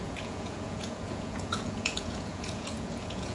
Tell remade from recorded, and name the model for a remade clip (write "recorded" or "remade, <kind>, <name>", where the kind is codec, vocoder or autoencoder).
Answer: remade, vocoder, Vocos